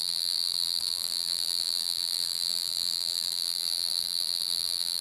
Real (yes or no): no